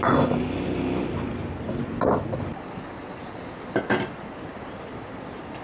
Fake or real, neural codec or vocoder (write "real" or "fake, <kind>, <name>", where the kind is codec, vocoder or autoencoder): real